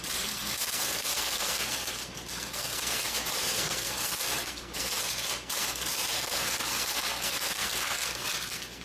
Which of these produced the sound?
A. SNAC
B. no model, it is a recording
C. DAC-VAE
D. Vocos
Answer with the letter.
A